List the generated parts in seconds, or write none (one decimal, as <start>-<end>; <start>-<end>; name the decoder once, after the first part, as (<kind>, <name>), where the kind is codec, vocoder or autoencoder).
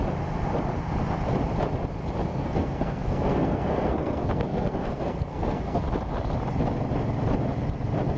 2.3-5.8 (codec, SNAC)